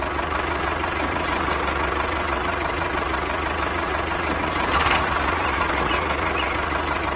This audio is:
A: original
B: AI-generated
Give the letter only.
B